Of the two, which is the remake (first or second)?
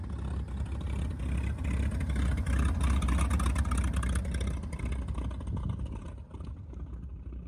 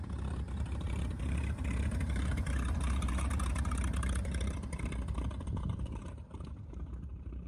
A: second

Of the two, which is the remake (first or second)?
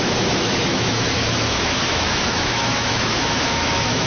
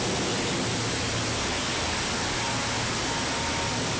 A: first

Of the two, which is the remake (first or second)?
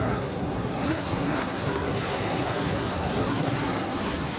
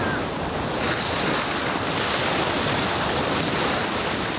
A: first